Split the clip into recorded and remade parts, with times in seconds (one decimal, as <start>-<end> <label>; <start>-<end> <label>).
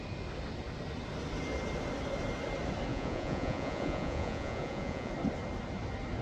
0.0-2.9 recorded; 2.9-5.1 remade; 5.1-6.2 recorded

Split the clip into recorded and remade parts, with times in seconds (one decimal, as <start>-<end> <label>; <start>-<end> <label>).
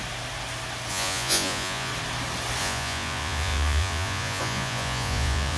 0.0-0.9 recorded; 0.9-1.9 remade; 1.9-2.6 recorded; 2.6-5.6 remade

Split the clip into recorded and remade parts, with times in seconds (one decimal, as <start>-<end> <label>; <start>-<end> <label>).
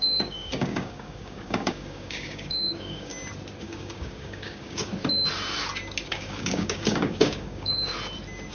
0.0-3.1 remade; 3.1-3.6 recorded; 3.6-4.9 remade; 4.9-6.1 recorded; 6.1-7.9 remade; 7.9-8.5 recorded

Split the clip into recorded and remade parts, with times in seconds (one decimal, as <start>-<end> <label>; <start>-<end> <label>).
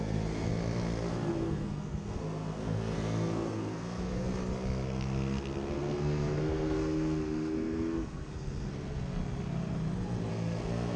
0.0-0.5 remade; 0.5-1.3 recorded; 1.3-4.3 remade; 4.3-5.7 recorded; 5.7-9.2 remade; 9.2-10.3 recorded; 10.3-11.0 remade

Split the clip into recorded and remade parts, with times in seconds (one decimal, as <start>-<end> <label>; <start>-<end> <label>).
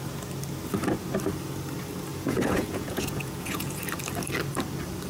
0.0-2.1 recorded; 2.1-3.8 remade; 3.8-5.1 recorded